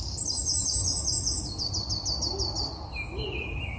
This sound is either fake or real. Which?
real